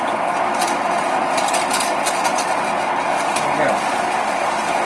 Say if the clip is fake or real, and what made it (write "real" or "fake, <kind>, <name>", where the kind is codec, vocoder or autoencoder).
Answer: real